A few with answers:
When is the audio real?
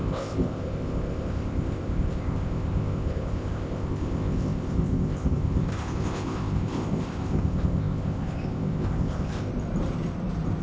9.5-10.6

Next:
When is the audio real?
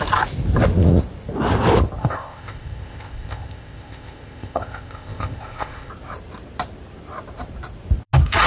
0.0-2.0; 5.9-8.5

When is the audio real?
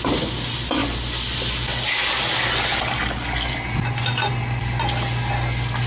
0.0-5.9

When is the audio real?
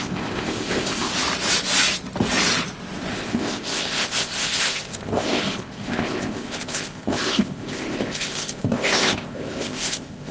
1.1-3.1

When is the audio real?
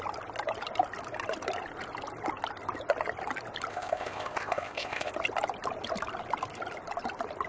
0.0-3.7; 5.1-7.5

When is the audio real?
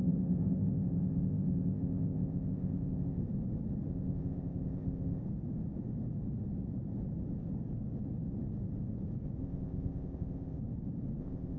3.2-3.9; 5.2-9.4; 10.6-11.2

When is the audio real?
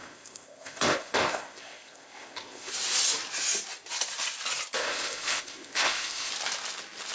2.7-4.8; 6.3-7.1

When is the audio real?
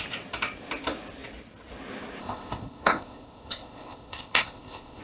0.0-2.2